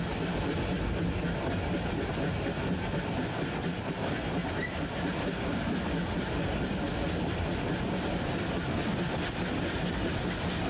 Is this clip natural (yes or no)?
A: yes